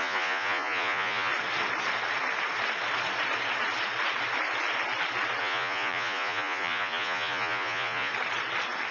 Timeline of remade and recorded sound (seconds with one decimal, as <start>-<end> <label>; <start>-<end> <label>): 0.0-1.3 remade; 1.3-5.4 recorded; 5.4-8.1 remade; 8.1-8.9 recorded